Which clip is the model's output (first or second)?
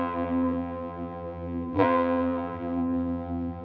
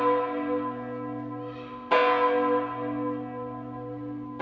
first